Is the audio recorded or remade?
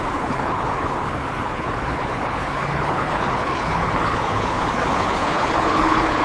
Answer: remade